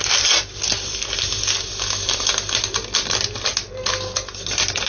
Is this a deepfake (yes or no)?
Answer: no